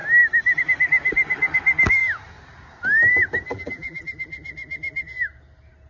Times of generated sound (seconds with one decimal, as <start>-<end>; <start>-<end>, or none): 3.5-4.0